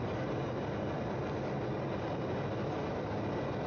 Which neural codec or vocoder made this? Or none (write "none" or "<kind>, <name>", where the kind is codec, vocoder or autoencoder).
none